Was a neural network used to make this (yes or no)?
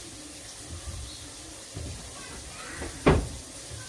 no